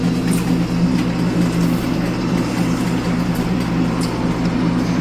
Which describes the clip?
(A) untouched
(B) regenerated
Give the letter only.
A